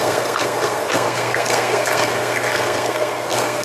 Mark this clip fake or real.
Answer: fake